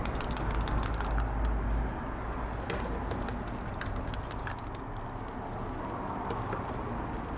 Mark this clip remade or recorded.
recorded